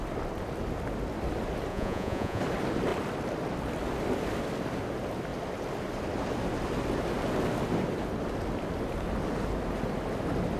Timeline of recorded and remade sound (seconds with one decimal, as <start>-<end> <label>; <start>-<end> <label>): 0.0-1.7 recorded; 1.7-2.4 remade; 2.4-10.6 recorded